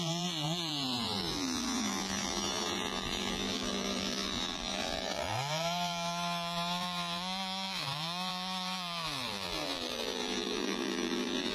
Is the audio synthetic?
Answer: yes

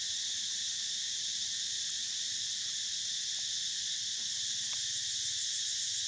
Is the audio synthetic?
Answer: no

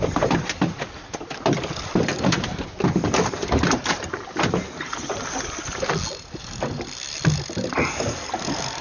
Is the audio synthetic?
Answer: no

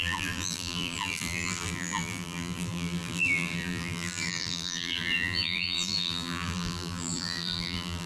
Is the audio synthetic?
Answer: yes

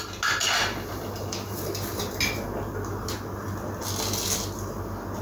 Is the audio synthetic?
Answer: no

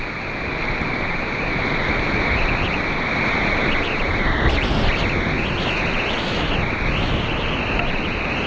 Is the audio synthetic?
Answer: no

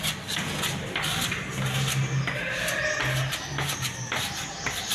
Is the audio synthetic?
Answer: no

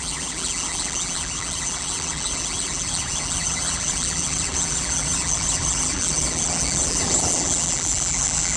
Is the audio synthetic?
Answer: yes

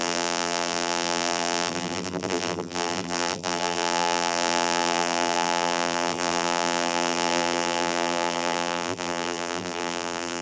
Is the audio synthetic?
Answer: yes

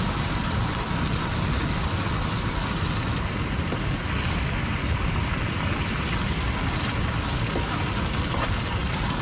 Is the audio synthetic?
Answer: no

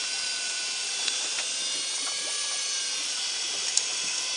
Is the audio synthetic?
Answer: yes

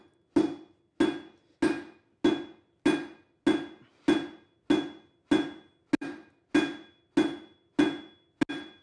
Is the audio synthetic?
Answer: no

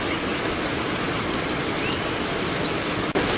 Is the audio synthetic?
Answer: no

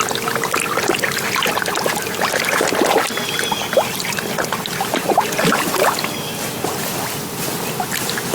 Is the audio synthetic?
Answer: no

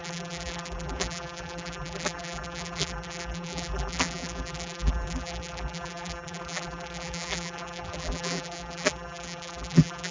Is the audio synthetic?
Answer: yes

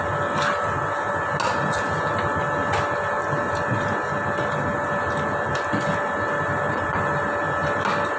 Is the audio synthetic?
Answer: no